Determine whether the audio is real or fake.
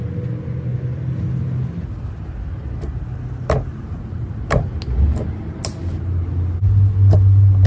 real